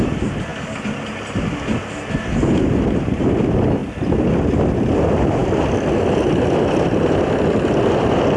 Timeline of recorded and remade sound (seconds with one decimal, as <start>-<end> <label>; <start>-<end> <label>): 0.0-0.5 recorded; 0.5-1.1 remade; 1.1-3.8 recorded; 3.8-4.5 remade; 4.5-8.4 recorded